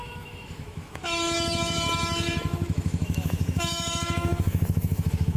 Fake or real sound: fake